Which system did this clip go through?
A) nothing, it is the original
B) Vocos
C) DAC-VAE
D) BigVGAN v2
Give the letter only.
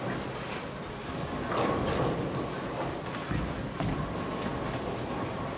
A